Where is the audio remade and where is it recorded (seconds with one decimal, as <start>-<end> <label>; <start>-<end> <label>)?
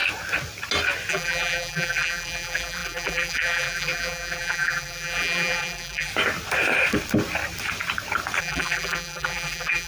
0.0-1.1 recorded; 1.1-6.1 remade; 6.1-8.4 recorded; 8.4-9.9 remade